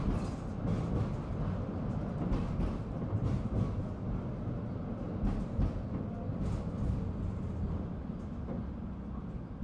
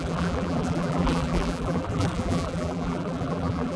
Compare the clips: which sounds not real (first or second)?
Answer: second